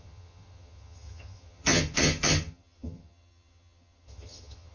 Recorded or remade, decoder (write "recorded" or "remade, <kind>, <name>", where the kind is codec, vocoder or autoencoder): remade, vocoder, HiFi-GAN